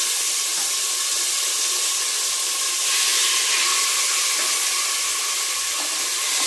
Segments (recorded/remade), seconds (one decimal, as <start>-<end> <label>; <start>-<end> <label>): 0.0-3.1 remade; 3.1-4.2 recorded; 4.2-6.5 remade